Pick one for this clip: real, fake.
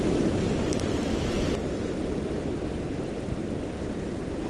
fake